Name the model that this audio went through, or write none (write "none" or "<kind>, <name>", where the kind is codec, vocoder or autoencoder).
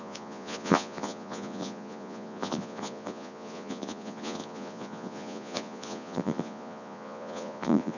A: vocoder, Vocos